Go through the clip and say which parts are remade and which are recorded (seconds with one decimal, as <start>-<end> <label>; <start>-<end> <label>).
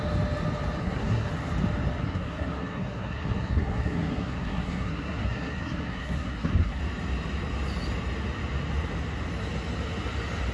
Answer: 0.0-0.8 recorded; 0.8-1.3 remade; 1.3-2.0 recorded; 2.0-6.8 remade; 6.8-10.5 recorded